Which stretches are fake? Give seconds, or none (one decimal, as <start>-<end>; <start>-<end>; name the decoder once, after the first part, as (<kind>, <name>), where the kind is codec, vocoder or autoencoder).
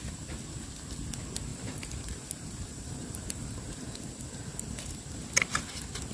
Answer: 1.5-5.0 (vocoder, BigVGAN v2)